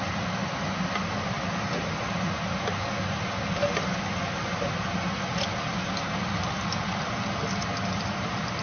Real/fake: real